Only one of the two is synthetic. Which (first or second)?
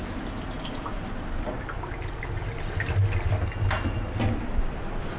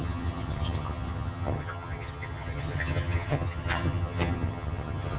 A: second